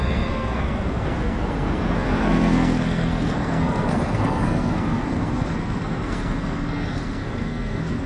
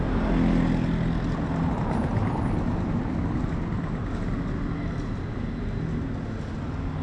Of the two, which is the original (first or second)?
second